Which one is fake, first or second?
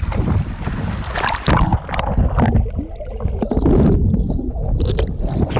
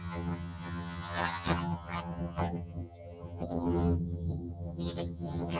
second